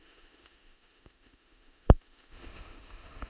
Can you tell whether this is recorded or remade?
remade